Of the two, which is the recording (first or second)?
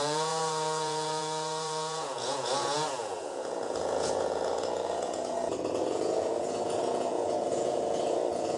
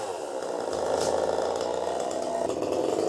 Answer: second